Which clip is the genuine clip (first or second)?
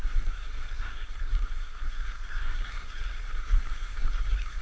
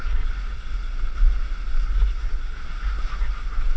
second